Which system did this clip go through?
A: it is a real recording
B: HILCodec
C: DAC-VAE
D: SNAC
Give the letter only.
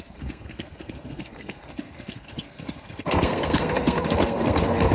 D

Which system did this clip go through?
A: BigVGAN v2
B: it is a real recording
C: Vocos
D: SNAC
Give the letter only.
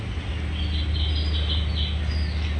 B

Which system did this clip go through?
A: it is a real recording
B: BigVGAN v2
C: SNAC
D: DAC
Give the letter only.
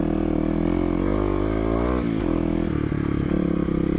A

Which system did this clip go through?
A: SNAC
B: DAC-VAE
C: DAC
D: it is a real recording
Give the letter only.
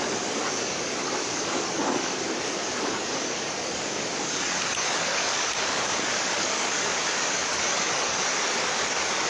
C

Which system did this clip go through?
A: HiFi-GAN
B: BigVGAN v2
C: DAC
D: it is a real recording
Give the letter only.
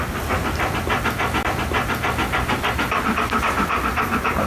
B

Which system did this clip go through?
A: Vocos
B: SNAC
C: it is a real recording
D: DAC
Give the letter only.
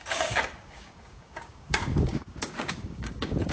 D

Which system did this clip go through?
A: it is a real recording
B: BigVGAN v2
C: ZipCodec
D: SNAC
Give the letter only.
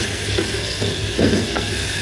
D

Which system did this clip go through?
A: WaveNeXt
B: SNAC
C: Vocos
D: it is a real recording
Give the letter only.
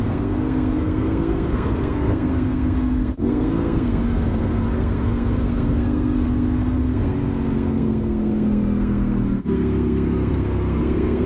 B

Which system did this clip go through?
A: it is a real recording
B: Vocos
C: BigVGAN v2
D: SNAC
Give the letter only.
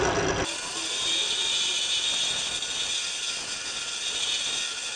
A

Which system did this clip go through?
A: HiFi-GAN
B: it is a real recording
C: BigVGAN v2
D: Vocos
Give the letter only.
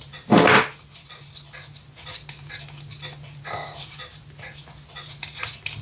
B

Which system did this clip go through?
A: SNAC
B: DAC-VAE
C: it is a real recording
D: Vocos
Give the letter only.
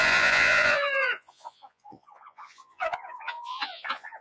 D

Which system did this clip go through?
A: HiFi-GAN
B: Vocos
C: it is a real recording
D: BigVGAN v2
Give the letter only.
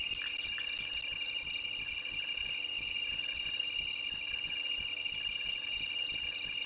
C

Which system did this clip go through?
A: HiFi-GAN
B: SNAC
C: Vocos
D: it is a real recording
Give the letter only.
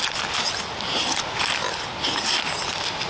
D